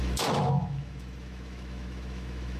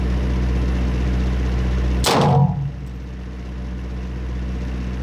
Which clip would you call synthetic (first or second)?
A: first